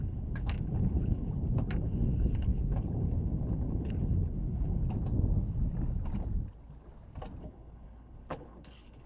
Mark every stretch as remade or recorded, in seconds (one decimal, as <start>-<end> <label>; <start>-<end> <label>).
0.0-4.8 remade; 4.8-7.4 recorded; 7.4-9.1 remade

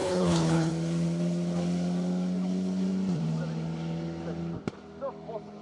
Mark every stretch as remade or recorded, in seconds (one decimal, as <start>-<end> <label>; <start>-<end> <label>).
0.0-0.7 remade; 0.7-5.6 recorded

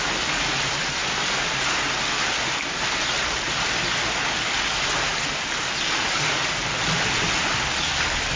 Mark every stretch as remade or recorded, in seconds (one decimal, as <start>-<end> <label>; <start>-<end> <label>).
0.0-8.4 recorded

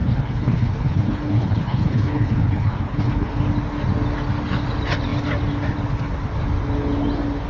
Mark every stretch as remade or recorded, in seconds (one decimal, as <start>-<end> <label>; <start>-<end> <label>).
0.0-3.4 remade; 3.4-7.5 recorded

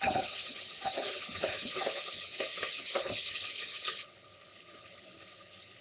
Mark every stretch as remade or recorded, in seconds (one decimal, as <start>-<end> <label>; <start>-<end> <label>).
0.0-5.8 remade